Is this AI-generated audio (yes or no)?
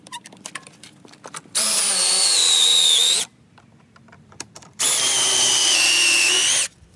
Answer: yes